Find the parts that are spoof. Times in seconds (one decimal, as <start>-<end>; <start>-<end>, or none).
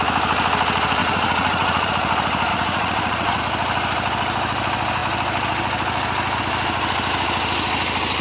1.0-1.9; 2.5-3.4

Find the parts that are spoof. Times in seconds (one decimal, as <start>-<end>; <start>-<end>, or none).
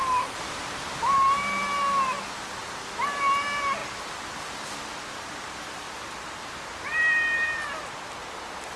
none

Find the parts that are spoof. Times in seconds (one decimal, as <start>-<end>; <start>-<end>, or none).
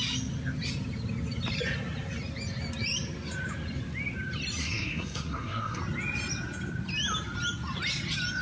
4.6-5.8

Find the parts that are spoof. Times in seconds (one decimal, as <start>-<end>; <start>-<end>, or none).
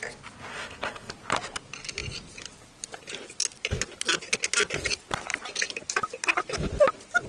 0.5-1.1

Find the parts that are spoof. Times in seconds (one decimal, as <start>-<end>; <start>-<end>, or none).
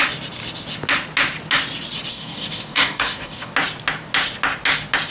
2.1-3.5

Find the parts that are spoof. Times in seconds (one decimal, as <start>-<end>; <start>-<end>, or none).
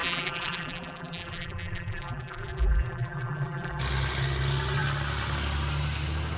0.0-3.8